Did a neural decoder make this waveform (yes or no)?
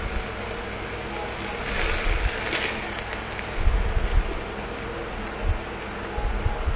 no